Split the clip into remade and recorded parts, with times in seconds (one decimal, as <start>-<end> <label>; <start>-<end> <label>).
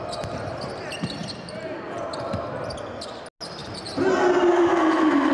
0.0-4.5 recorded; 4.5-5.3 remade